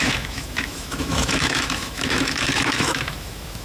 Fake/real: fake